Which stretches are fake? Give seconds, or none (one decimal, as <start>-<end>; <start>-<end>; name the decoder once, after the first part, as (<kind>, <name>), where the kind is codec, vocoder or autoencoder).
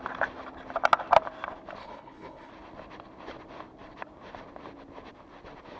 1.8-2.5 (codec, HILCodec)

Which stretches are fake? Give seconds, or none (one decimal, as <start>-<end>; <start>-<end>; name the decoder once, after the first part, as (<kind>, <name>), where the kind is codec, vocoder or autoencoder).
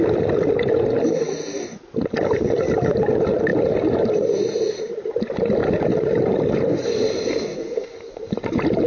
none